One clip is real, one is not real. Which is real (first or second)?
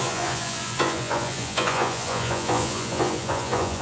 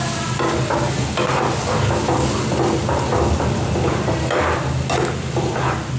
second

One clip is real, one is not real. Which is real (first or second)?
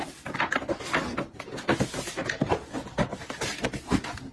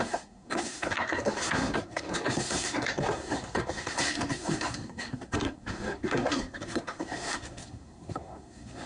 first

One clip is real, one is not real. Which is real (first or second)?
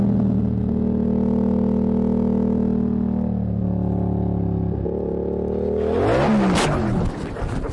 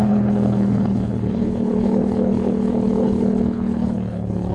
first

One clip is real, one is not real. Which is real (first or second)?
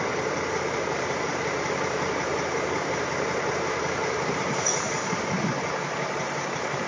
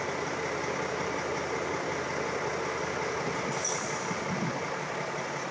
second